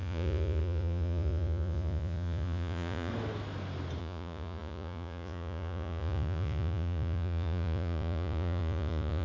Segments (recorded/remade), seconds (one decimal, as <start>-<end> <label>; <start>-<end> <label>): 0.0-3.1 remade; 3.1-4.0 recorded; 4.0-9.2 remade